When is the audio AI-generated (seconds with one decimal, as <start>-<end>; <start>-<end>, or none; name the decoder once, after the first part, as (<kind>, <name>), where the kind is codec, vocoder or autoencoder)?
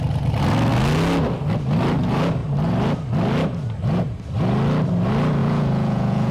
5.4-6.3 (vocoder, Vocos)